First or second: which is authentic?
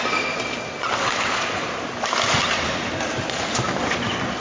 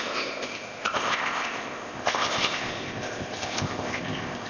first